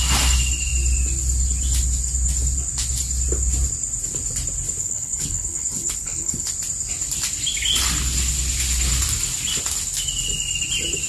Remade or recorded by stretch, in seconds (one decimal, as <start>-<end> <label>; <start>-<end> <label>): 0.0-4.8 recorded; 4.8-6.5 remade; 6.5-11.1 recorded